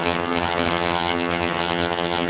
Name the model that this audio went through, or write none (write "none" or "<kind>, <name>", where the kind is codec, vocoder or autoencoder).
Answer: vocoder, HiFi-GAN